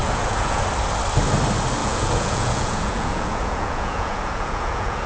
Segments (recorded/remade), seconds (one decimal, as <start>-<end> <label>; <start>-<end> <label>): 0.0-0.6 remade; 0.6-1.8 recorded; 1.8-5.1 remade